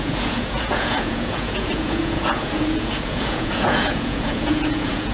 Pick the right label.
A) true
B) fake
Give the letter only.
B